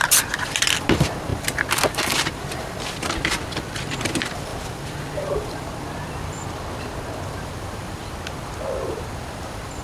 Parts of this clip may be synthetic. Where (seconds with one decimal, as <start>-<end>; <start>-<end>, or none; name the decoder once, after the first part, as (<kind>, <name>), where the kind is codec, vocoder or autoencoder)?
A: 0.0-9.8 (vocoder, BigVGAN v2)